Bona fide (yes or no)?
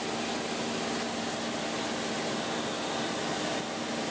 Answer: yes